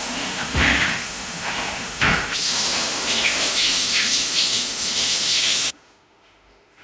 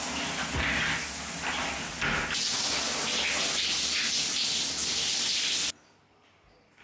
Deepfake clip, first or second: first